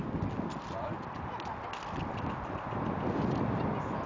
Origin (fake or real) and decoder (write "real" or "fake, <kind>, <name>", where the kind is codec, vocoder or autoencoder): real